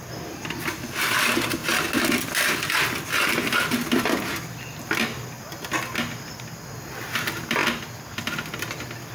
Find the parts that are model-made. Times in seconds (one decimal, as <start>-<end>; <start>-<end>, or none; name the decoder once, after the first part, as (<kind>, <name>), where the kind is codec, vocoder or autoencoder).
none